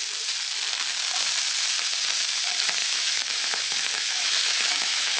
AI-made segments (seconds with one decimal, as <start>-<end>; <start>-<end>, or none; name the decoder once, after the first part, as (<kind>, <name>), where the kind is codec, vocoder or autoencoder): 2.8-5.2 (autoencoder, DAC-VAE)